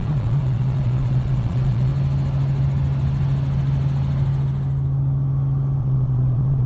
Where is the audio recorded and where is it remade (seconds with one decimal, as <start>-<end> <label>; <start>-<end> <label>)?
0.0-1.9 remade; 1.9-5.8 recorded; 5.8-6.7 remade